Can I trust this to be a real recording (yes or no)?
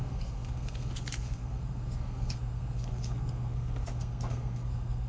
no